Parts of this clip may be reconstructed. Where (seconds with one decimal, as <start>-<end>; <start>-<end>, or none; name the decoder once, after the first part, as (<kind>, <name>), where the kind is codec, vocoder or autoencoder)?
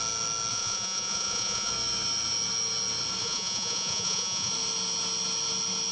0.5-1.7 (vocoder, Vocos); 3.2-4.5